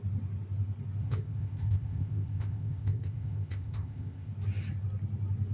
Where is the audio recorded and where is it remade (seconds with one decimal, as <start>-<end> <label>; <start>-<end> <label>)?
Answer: 0.0-1.0 recorded; 1.0-4.3 remade; 4.3-5.5 recorded